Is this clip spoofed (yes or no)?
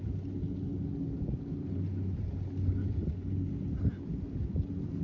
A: no